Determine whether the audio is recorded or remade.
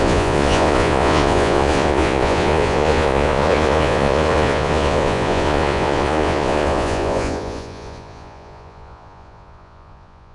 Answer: remade